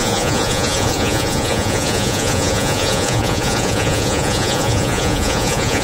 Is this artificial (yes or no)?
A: yes